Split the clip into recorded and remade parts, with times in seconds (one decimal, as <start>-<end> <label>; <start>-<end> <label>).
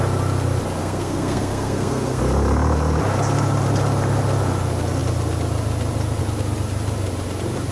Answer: 0.0-0.8 recorded; 0.8-2.2 remade; 2.2-7.7 recorded